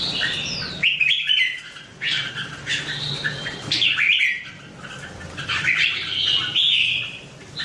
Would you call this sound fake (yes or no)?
yes